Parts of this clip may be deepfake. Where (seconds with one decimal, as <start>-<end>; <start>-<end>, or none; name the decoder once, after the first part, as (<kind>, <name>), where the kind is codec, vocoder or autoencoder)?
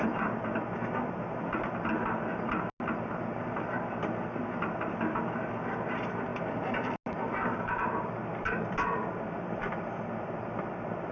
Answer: none